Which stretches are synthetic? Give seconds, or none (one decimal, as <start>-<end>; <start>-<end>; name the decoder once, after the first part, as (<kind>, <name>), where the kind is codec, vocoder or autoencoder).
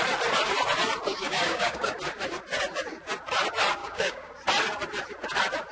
1.1-1.9 (codec, DAC); 3.8-4.3